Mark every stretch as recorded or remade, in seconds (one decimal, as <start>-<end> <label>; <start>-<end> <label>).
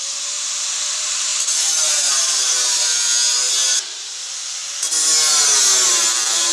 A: 0.0-3.1 remade; 3.1-3.9 recorded; 3.9-4.6 remade; 4.6-6.1 recorded; 6.1-6.5 remade